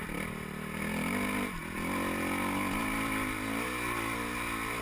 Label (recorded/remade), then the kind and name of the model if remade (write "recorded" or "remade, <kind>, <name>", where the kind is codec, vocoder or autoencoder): recorded